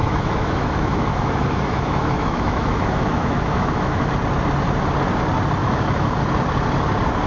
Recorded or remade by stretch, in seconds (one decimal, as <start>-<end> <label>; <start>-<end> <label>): 0.0-4.1 remade; 4.1-5.6 recorded; 5.6-6.2 remade; 6.2-7.3 recorded